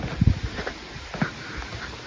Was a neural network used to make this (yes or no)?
no